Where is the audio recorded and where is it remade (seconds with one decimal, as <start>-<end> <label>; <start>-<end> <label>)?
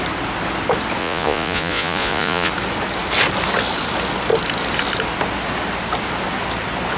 0.0-1.0 recorded; 1.0-2.5 remade; 2.5-7.0 recorded